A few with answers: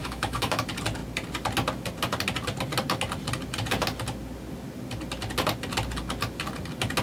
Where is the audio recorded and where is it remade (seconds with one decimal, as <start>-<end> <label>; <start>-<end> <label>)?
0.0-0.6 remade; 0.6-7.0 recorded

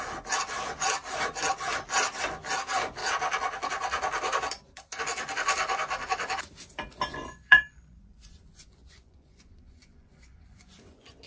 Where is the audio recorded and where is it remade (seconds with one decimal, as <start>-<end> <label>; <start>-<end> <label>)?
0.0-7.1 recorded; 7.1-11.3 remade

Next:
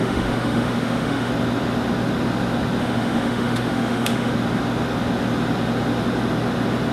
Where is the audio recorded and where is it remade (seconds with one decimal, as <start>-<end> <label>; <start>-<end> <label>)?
0.0-1.3 remade; 1.3-2.8 recorded; 2.8-4.3 remade; 4.3-6.9 recorded

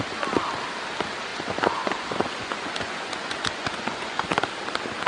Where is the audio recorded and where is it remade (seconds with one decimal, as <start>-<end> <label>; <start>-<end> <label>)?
0.0-1.3 recorded; 1.3-4.4 remade; 4.4-5.1 recorded

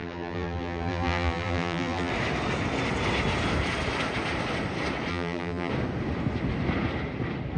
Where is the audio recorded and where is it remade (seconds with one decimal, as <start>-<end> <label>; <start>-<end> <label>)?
0.0-2.1 remade; 2.1-5.1 recorded; 5.1-5.7 remade; 5.7-7.6 recorded

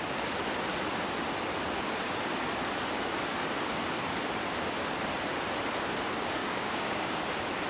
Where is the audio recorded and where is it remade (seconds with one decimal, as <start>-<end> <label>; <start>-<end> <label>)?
0.0-6.4 recorded; 6.4-7.2 remade; 7.2-7.7 recorded

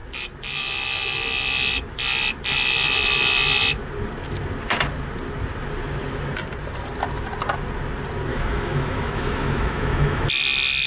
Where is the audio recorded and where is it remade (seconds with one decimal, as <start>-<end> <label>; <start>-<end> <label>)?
0.0-8.3 recorded; 8.3-10.3 remade; 10.3-10.9 recorded

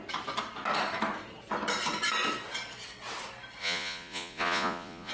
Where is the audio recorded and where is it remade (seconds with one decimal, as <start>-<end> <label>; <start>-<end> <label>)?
0.0-3.6 recorded; 3.6-5.1 remade